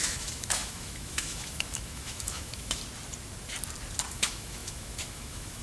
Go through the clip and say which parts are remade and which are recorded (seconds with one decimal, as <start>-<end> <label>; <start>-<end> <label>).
0.0-2.8 remade; 2.8-4.1 recorded; 4.1-5.6 remade